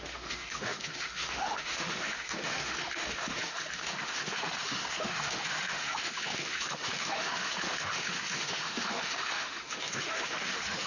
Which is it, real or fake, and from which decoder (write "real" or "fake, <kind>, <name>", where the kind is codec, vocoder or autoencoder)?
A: fake, autoencoder, DAC-VAE